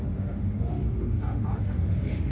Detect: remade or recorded remade